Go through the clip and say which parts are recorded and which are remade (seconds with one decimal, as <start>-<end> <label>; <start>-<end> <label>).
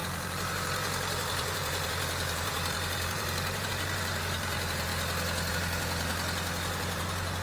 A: 0.0-4.9 remade; 4.9-5.5 recorded; 5.5-6.1 remade; 6.1-6.7 recorded; 6.7-7.4 remade